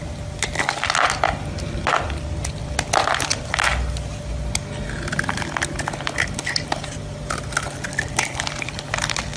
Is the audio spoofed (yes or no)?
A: no